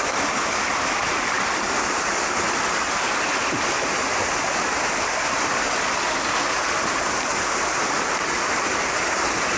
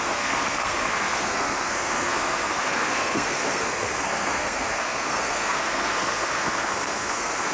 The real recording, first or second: first